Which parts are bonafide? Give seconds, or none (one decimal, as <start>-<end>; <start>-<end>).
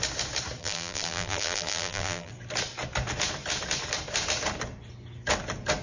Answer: 0.0-0.6; 2.3-5.8